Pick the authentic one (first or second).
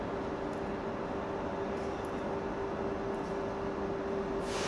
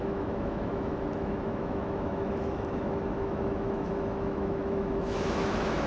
first